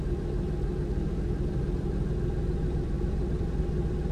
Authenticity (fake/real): real